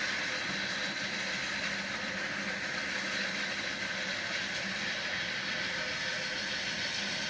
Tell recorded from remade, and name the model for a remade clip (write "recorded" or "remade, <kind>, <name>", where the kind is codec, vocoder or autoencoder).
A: recorded